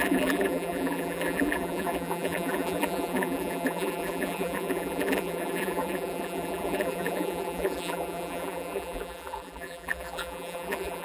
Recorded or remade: remade